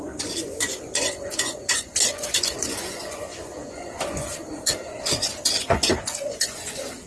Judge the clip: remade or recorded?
remade